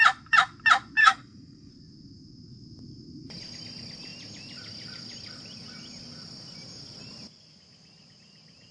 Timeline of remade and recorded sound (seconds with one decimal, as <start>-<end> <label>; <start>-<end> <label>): 0.0-1.0 recorded; 1.0-1.7 remade; 1.7-8.7 recorded